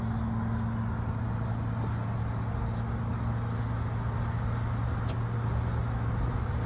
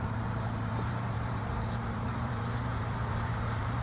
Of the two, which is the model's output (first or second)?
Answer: second